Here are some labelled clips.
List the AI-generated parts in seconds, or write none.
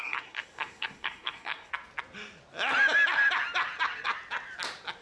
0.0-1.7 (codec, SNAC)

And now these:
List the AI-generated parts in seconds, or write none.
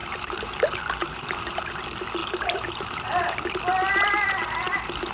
0.0-0.5 (vocoder, BigVGAN v2); 1.0-1.7; 2.2-3.5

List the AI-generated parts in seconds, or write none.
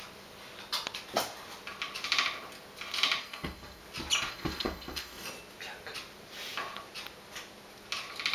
3.2-3.8 (codec, SNAC); 4.3-5.3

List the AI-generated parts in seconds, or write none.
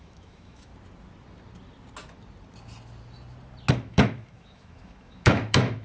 0.0-0.7 (autoencoder, DAC-VAE); 3.7-5.8